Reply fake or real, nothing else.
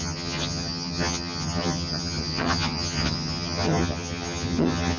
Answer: fake